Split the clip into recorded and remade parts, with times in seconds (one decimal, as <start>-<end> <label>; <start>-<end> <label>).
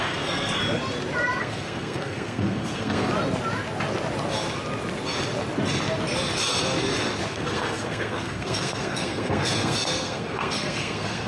0.0-0.6 remade; 0.6-1.4 recorded; 1.4-3.1 remade; 3.1-7.3 recorded; 7.3-11.3 remade